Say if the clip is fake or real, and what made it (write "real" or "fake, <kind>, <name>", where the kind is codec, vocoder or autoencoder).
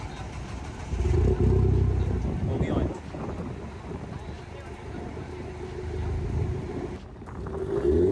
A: real